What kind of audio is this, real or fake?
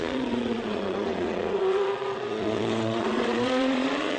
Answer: fake